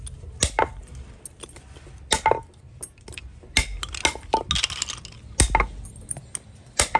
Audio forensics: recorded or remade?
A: recorded